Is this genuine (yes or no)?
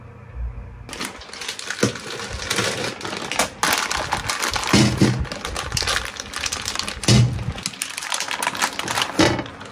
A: yes